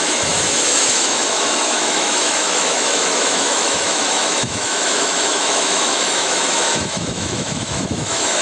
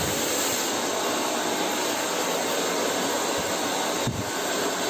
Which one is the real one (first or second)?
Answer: second